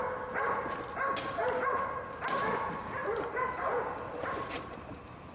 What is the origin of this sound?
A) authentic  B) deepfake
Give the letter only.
A